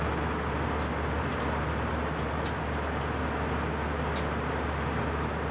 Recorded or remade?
recorded